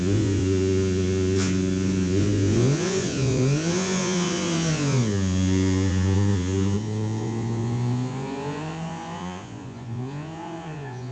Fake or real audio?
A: fake